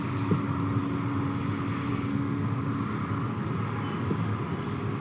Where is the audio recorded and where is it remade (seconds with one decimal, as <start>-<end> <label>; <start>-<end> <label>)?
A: 0.0-1.9 recorded; 1.9-2.6 remade; 2.6-5.0 recorded